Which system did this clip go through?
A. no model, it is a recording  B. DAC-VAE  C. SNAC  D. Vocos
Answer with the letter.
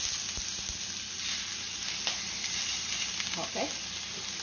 A